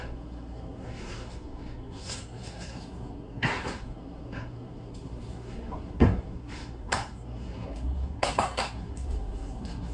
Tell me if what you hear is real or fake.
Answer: fake